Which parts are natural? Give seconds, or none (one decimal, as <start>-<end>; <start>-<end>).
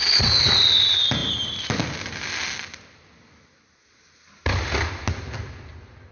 0.0-6.1